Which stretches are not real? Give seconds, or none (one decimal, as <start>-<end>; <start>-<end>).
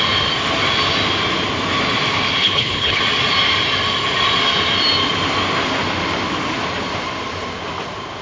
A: 2.4-3.0